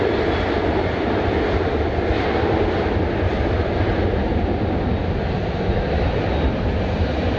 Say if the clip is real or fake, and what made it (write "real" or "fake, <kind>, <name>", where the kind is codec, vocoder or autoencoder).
real